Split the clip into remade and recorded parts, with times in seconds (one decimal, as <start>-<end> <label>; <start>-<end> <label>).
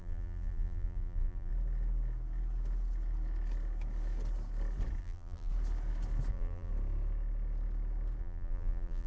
0.0-1.5 remade; 1.5-5.0 recorded; 5.0-5.5 remade; 5.5-6.3 recorded; 6.3-6.7 remade; 6.7-8.2 recorded; 8.2-9.1 remade